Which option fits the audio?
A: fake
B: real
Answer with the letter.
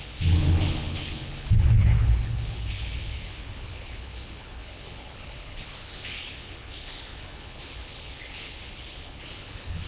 A